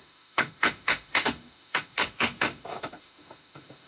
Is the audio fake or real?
fake